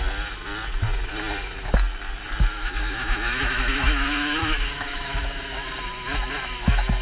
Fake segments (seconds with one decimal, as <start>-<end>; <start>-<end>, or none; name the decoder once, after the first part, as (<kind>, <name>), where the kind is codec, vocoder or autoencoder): 2.5-5.4 (autoencoder, DAC-VAE)